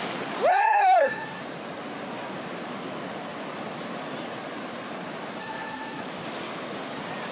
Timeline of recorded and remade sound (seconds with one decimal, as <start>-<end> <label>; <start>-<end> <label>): 0.0-0.5 recorded; 0.5-1.4 remade; 1.4-5.4 recorded; 5.4-6.0 remade; 6.0-7.3 recorded